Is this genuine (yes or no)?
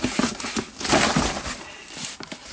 yes